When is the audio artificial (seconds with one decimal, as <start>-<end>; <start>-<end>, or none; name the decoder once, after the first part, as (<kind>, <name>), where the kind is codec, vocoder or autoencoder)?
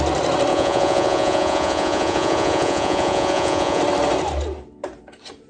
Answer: 0.5-3.8 (vocoder, Vocos)